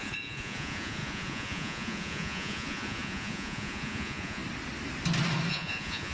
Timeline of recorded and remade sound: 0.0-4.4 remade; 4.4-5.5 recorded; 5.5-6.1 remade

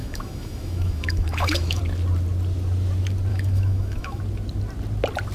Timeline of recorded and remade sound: 0.0-1.8 remade; 1.8-3.3 recorded; 3.3-4.2 remade; 4.2-5.3 recorded